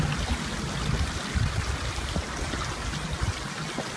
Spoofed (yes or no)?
no